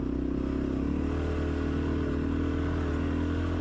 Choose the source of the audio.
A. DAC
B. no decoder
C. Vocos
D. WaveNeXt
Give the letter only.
B